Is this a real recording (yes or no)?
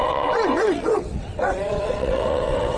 no